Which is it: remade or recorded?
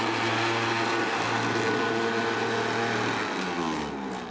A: recorded